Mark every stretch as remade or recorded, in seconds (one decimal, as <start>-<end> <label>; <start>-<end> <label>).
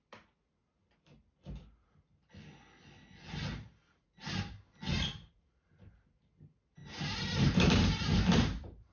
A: 0.0-4.9 recorded; 4.9-5.7 remade; 5.7-6.8 recorded; 6.8-8.9 remade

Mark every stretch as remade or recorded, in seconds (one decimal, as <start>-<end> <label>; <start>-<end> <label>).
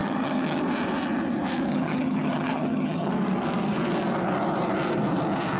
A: 0.0-0.6 remade; 0.6-1.7 recorded; 1.7-3.1 remade; 3.1-5.6 recorded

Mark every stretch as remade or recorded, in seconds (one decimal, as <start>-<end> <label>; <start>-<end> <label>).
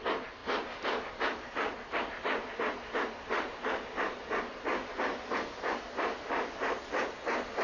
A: 0.0-7.6 recorded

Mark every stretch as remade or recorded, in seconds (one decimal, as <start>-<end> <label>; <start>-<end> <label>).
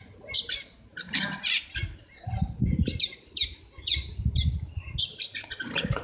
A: 0.0-0.9 recorded; 0.9-4.5 remade; 4.5-5.1 recorded; 5.1-6.0 remade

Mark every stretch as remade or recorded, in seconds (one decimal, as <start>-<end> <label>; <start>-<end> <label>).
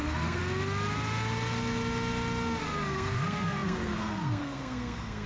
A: 0.0-0.4 remade; 0.4-2.6 recorded; 2.6-5.3 remade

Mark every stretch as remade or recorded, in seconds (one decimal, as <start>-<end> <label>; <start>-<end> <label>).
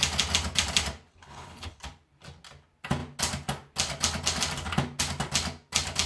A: 0.0-1.1 recorded; 1.1-1.8 remade; 1.8-6.1 recorded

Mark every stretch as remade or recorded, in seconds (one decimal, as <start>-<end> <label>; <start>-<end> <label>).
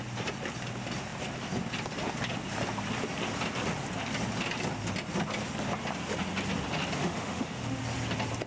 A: 0.0-7.0 recorded; 7.0-7.8 remade; 7.8-8.5 recorded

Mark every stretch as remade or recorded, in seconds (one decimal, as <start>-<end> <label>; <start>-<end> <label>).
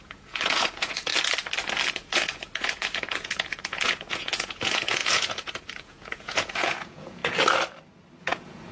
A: 0.0-1.1 remade; 1.1-1.9 recorded; 1.9-7.2 remade; 7.2-8.2 recorded; 8.2-8.7 remade